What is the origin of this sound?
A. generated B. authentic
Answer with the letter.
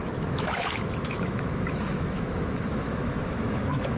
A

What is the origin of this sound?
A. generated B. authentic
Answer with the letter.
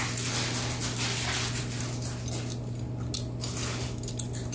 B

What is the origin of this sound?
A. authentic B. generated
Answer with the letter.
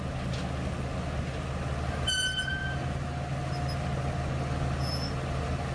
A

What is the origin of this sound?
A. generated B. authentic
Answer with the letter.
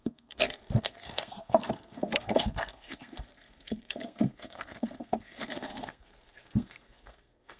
A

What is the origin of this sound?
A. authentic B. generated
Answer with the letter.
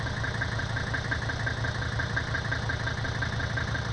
A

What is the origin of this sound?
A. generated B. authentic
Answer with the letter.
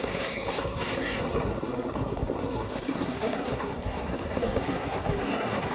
A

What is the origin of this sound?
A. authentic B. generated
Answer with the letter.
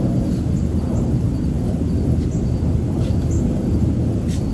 A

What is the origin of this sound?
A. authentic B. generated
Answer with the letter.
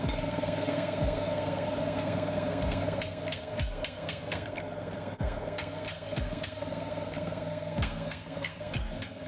B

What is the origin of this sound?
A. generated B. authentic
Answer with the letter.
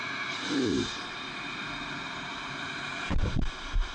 A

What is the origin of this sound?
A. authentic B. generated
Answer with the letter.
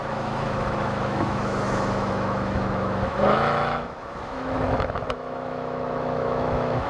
B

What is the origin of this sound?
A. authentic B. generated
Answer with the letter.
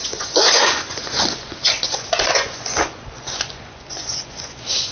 B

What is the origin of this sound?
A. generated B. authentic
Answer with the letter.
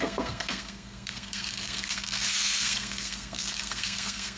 A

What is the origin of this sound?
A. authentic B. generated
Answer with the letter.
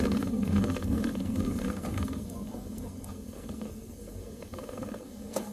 B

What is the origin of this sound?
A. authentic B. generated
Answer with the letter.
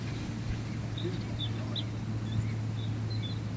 A